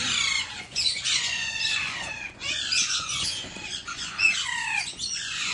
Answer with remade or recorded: remade